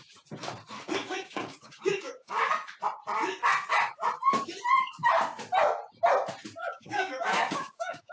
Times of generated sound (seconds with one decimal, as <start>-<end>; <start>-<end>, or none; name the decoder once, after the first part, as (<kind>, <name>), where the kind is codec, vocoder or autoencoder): 1.0-2.5 (codec, DAC); 6.6-8.1

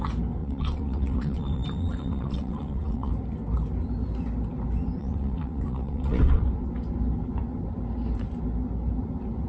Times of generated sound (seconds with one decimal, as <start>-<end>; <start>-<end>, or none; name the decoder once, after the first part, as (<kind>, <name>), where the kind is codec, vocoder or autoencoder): 0.4-3.1 (vocoder, WaveNeXt); 5.0-6.4

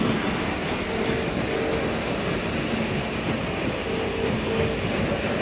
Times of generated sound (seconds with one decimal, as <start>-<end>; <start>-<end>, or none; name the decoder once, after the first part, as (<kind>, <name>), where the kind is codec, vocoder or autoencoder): none

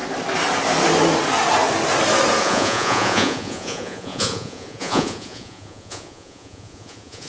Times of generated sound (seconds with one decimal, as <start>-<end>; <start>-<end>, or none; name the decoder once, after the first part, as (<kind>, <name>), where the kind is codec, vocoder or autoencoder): 2.4-7.3 (vocoder, Vocos)